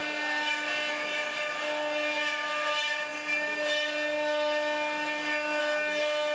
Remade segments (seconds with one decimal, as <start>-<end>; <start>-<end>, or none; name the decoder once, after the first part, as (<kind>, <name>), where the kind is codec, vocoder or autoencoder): none

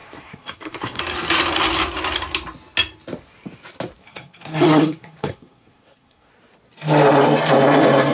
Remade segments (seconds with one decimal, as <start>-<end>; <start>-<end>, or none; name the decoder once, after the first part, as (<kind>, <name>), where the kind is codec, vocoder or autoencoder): 0.0-1.0 (codec, SNAC); 4.0-6.3

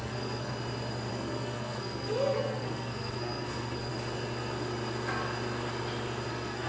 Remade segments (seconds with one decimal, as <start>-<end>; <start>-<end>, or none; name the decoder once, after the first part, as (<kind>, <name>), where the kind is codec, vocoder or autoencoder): 0.0-0.5 (codec, SNAC); 1.1-3.9; 6.3-6.7

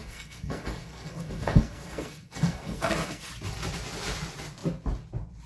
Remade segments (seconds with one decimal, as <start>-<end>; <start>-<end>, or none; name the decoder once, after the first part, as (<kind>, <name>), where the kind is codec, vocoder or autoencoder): 0.0-3.3 (codec, SNAC)

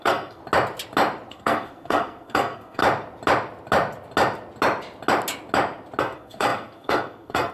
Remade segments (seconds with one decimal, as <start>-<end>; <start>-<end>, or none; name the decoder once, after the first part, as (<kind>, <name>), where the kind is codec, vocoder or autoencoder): 0.0-0.4 (codec, SNAC); 1.3-2.8; 6.0-7.5

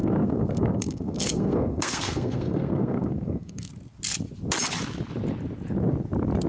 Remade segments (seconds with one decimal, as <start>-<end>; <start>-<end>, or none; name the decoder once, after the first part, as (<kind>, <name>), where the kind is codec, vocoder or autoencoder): 0.0-3.7 (codec, SNAC)

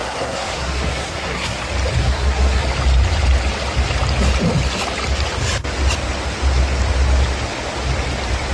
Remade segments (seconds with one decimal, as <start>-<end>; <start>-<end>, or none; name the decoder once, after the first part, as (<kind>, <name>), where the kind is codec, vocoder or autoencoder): 0.0-1.6 (codec, SNAC); 2.0-2.6